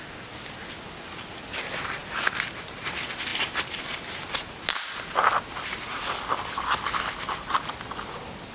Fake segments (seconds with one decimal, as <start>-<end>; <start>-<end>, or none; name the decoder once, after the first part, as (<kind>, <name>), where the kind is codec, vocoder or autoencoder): none